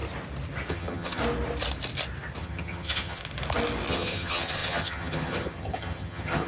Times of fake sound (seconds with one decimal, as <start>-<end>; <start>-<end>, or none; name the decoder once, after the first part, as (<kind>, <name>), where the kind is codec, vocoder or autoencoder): 0.7-1.2 (vocoder, HiFi-GAN); 2.4-3.2; 3.9-6.5